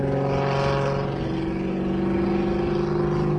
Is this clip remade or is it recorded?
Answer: recorded